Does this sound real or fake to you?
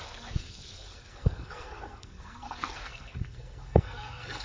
fake